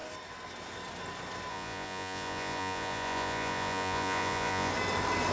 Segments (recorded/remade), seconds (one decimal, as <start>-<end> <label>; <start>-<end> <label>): 0.0-1.5 recorded; 1.5-4.7 remade; 4.7-5.3 recorded